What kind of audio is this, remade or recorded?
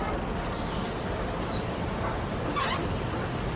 remade